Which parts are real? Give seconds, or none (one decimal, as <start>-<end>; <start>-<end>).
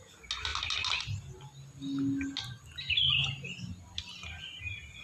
0.0-5.0